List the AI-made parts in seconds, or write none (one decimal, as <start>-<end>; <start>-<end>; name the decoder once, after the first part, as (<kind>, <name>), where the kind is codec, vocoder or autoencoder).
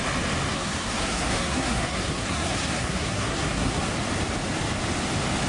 0.5-3.8 (codec, SNAC)